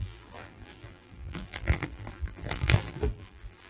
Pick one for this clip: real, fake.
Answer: fake